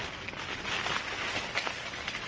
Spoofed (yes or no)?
no